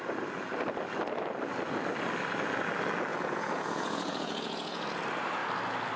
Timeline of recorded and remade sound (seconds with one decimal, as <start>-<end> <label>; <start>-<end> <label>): 0.0-3.1 recorded; 3.1-5.0 remade; 5.0-6.0 recorded